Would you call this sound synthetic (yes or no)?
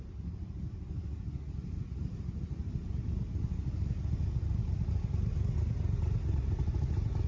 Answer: no